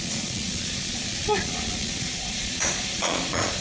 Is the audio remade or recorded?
remade